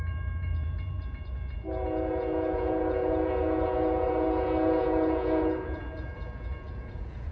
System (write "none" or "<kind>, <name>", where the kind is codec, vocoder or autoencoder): vocoder, Vocos